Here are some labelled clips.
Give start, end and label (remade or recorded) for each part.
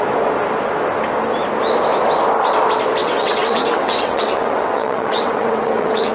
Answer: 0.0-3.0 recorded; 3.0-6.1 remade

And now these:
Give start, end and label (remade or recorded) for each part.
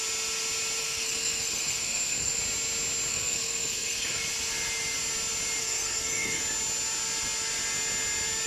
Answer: 0.0-0.8 recorded; 0.8-2.4 remade; 2.4-3.1 recorded; 3.1-4.2 remade; 4.2-5.6 recorded; 5.6-6.4 remade; 6.4-8.5 recorded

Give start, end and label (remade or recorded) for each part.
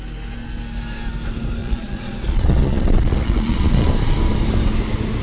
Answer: 0.0-1.6 recorded; 1.6-3.9 remade; 3.9-5.2 recorded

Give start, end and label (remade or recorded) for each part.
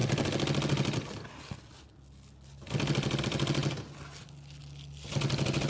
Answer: 0.0-5.7 recorded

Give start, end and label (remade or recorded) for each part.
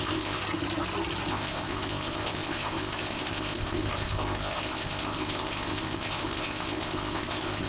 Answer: 0.0-0.4 remade; 0.4-1.3 recorded; 1.3-7.7 remade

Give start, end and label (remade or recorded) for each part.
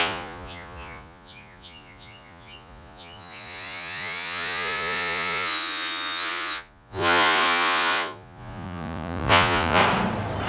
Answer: 0.0-9.8 remade; 9.8-10.5 recorded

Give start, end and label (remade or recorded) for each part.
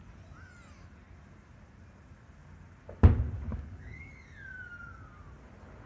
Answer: 0.0-3.5 recorded; 3.5-4.1 remade; 4.1-5.9 recorded